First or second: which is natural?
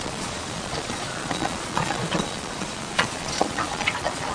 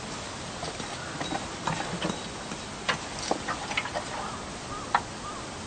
second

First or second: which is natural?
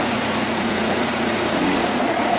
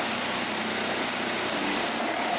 second